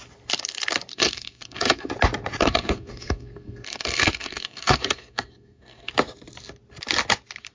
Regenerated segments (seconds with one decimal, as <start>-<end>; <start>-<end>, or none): 0.9-1.9; 2.4-5.9